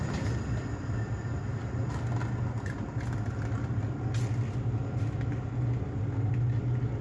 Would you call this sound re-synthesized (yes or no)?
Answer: no